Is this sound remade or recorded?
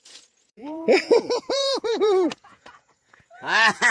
remade